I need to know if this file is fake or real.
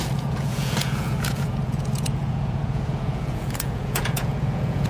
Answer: fake